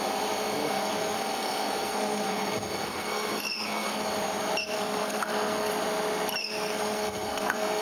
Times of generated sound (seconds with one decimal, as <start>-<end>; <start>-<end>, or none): 0.6-4.0; 4.6-5.7; 6.4-7.8